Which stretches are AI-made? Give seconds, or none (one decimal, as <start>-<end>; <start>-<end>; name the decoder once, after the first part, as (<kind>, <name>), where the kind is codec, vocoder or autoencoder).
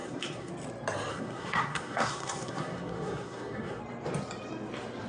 0.0-0.5 (codec, SNAC); 1.1-3.8